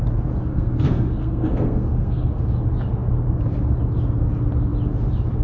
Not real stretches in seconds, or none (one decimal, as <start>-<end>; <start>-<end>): 0.5-2.4